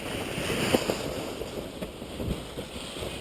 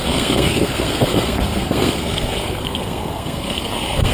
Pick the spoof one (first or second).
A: second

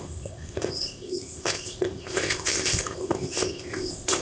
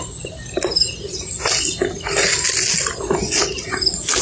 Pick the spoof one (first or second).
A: first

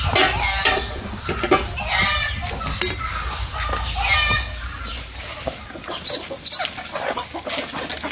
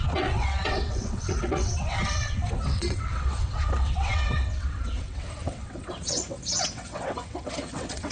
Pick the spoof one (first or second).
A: second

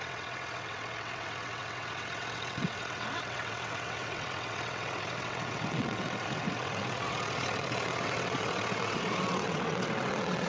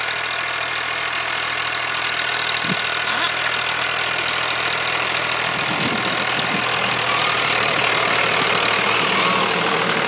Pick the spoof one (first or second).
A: first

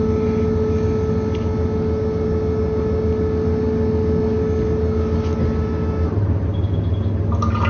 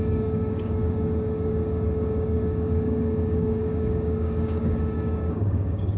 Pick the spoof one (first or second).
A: second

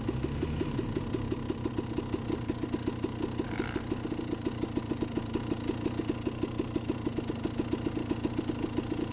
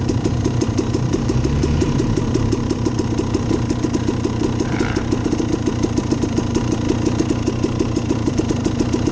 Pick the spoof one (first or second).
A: second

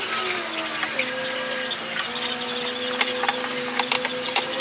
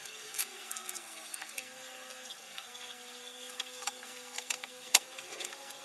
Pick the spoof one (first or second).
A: second